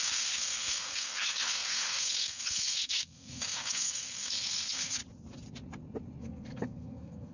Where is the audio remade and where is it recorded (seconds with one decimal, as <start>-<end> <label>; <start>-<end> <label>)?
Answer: 0.0-5.0 remade; 5.0-6.2 recorded; 6.2-7.3 remade